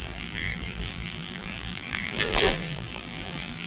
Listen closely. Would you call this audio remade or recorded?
remade